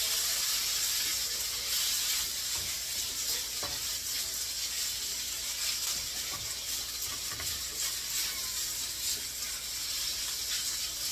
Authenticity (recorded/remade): recorded